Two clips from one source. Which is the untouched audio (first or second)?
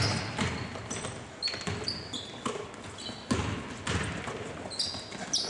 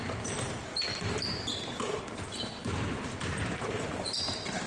first